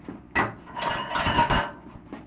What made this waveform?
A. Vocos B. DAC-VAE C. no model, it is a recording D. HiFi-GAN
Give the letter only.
C